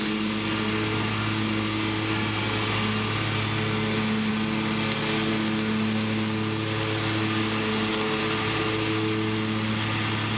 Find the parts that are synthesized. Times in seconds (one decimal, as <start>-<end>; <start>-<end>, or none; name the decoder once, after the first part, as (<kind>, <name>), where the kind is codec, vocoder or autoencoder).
none